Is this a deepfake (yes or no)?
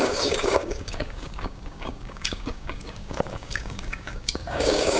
yes